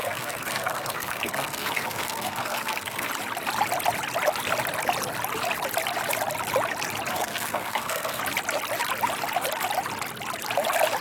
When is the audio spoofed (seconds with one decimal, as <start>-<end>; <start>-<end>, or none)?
0.0-3.1; 7.1-8.2